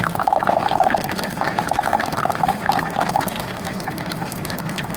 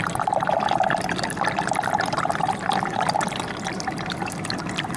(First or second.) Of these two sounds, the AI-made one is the first